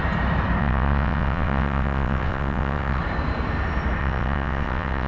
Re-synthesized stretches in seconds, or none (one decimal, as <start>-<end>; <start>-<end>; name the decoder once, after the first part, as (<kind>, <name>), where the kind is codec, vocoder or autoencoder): 0.6-3.0 (vocoder, WaveNeXt); 4.0-5.1